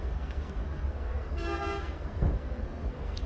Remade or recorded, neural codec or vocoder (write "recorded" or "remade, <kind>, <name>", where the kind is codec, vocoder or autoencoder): remade, codec, SNAC